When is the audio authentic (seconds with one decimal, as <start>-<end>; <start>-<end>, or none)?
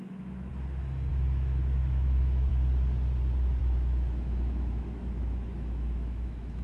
0.5-1.1; 2.5-3.6